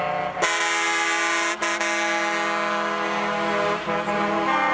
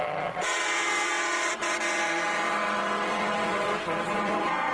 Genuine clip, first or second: first